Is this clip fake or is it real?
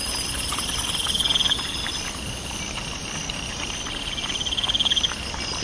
real